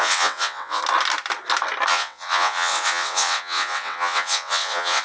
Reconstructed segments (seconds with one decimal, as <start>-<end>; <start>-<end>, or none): 0.0-0.8; 1.9-5.0